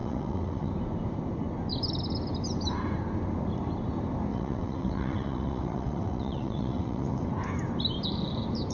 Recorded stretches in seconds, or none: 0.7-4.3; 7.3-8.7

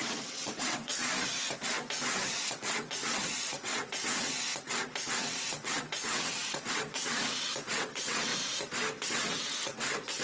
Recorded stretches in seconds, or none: 1.0-2.3; 4.5-5.2; 8.3-9.1

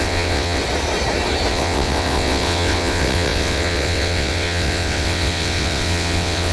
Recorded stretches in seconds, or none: 0.6-1.5

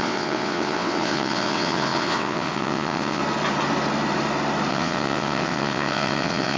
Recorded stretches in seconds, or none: 3.2-4.7